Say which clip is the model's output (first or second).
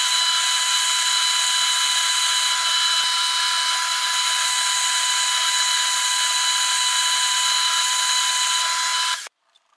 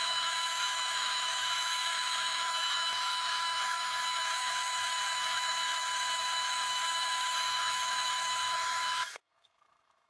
second